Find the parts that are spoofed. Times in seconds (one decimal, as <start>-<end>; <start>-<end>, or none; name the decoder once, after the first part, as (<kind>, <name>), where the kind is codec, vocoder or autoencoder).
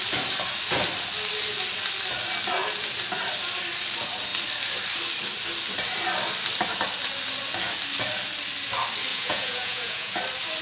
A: 9.1-10.2 (vocoder, Vocos)